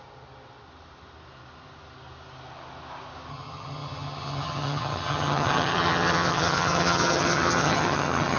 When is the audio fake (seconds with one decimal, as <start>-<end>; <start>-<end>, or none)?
3.3-8.4